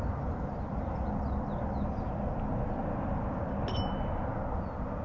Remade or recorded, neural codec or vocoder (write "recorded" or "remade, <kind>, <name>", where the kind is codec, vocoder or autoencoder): recorded